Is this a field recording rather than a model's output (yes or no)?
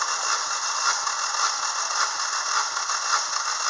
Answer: yes